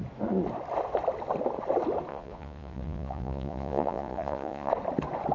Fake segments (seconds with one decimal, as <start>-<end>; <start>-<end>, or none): 2.1-4.7